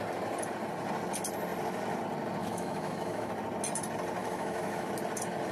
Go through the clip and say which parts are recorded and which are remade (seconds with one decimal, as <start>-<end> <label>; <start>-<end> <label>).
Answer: 0.0-2.4 recorded; 2.4-3.3 remade; 3.3-4.2 recorded; 4.2-4.9 remade; 4.9-5.5 recorded